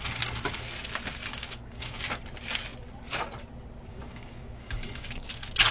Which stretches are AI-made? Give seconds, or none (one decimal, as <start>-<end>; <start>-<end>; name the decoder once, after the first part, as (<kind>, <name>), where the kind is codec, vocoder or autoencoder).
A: 1.2-2.0 (codec, DAC); 3.9-5.3